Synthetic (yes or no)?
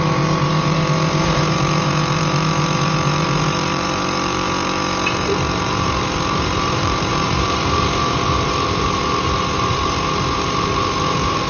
yes